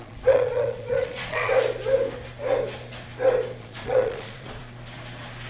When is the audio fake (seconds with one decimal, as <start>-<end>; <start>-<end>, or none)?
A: 0.0-1.5; 3.6-4.6